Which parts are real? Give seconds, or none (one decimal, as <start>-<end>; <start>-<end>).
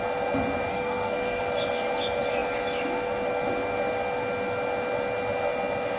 0.0-0.7; 1.4-6.0